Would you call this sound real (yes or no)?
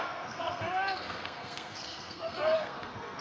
no